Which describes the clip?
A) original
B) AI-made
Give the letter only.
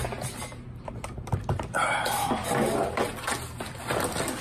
A